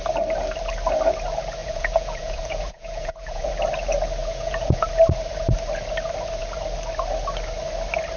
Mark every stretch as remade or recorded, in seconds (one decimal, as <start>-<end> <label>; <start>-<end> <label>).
0.0-1.6 recorded; 1.6-3.5 remade; 3.5-4.2 recorded; 4.2-4.9 remade; 4.9-8.2 recorded